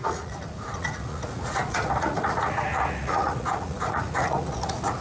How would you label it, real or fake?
fake